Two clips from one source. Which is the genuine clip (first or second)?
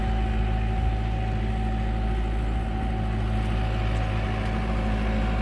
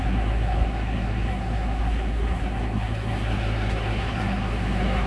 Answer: first